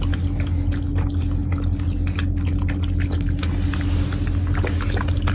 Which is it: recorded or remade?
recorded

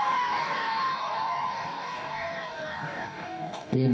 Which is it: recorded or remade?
remade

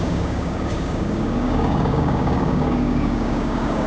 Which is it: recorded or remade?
remade